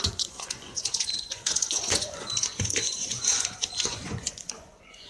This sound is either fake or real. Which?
fake